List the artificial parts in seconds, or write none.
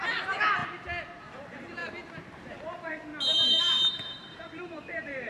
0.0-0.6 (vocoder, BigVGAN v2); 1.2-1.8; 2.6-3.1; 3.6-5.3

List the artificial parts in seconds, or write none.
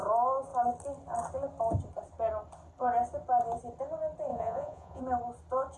4.3-5.0 (vocoder, Vocos)